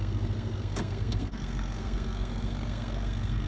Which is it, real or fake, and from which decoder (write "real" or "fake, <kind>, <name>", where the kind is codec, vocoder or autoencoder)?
fake, codec, SNAC